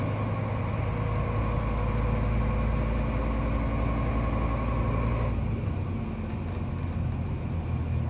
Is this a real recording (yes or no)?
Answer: yes